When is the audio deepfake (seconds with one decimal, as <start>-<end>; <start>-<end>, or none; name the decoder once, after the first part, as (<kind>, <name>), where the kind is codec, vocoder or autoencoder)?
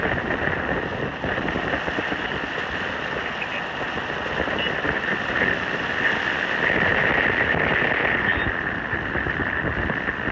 none